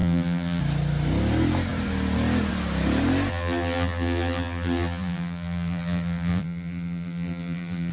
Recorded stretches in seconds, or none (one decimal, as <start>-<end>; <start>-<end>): 0.6-3.3